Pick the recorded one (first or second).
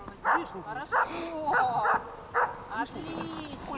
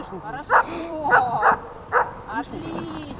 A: first